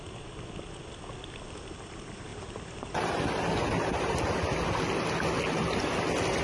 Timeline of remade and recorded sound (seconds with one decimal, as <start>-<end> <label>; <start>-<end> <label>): 0.0-2.3 recorded; 2.3-3.1 remade; 3.1-3.6 recorded; 3.6-4.2 remade; 4.2-6.4 recorded